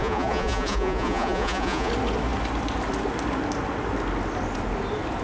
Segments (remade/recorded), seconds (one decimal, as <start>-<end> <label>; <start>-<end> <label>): 0.0-1.9 remade; 1.9-5.2 recorded